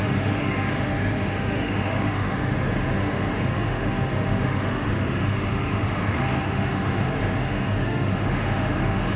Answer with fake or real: fake